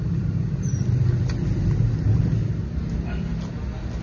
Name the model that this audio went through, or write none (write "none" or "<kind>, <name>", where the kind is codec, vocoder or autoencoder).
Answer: none